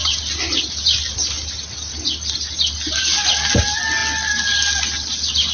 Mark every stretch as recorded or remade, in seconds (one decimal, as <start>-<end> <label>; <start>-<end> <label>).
0.0-5.5 recorded

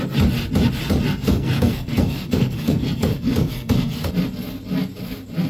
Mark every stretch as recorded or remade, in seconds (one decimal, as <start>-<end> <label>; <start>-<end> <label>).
0.0-1.1 recorded; 1.1-4.1 remade; 4.1-5.5 recorded

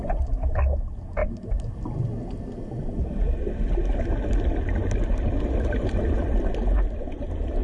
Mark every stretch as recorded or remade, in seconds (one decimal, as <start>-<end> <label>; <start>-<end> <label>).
0.0-7.6 recorded

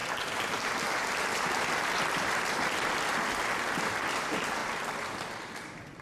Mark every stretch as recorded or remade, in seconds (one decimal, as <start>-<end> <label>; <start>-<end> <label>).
0.0-6.0 recorded

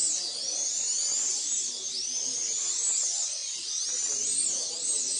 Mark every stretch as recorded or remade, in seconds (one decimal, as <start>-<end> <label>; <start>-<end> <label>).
0.0-5.2 recorded

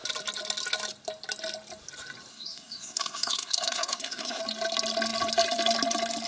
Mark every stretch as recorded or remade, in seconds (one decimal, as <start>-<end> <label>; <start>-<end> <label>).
0.0-2.3 recorded; 2.3-4.4 remade; 4.4-6.3 recorded